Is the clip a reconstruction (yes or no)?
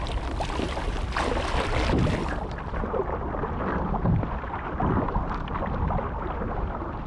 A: no